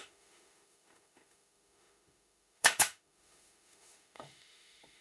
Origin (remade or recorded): remade